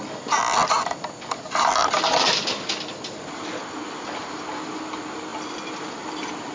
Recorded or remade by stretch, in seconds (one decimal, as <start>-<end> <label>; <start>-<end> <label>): 0.0-6.5 recorded